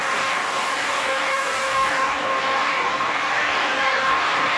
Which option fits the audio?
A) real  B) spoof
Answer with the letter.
B